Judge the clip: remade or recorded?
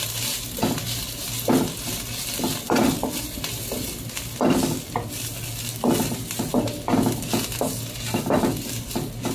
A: recorded